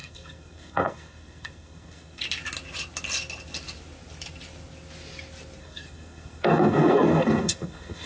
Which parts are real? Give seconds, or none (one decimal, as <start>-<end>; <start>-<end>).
2.2-5.6

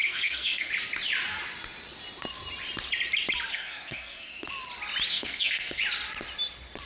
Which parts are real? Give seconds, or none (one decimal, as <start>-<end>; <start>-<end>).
0.7-3.5; 4.5-5.1; 5.8-6.9